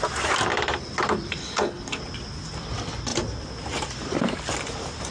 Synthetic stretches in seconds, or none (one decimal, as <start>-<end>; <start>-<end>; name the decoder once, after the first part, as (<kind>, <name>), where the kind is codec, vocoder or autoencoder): 1.4-2.0 (codec, HILCodec)